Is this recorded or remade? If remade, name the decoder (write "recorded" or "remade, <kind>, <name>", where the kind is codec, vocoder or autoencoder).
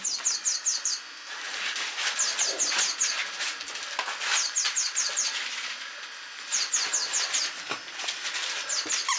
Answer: recorded